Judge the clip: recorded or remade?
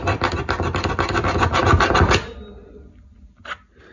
recorded